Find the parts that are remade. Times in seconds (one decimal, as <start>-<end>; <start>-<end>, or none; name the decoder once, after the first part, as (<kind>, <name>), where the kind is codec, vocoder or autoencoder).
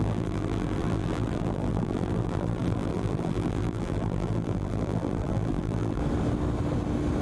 0.0-6.0 (vocoder, BigVGAN v2)